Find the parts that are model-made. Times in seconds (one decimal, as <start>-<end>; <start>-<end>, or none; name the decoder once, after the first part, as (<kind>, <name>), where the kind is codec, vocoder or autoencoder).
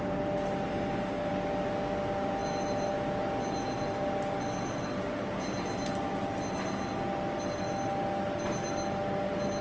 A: 0.7-1.3 (codec, DAC)